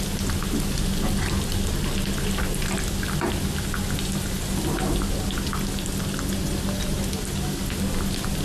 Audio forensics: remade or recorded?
recorded